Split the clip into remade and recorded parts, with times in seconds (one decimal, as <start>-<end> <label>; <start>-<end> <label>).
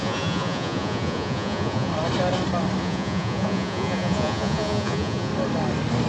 0.0-1.9 remade; 1.9-2.8 recorded; 2.8-5.3 remade; 5.3-6.1 recorded